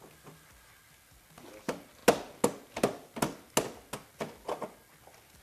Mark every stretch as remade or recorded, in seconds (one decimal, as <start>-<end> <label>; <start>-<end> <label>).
0.0-5.4 recorded